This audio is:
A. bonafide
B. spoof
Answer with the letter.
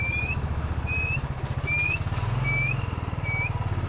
A